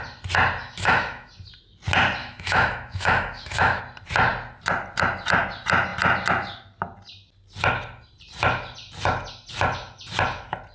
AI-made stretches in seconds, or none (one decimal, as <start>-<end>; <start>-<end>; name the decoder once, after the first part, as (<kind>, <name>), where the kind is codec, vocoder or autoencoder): 0.6-1.3 (autoencoder, DAC-VAE); 2.2-3.8